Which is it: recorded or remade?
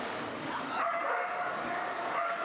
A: remade